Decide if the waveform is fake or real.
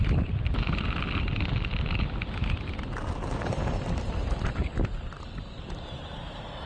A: real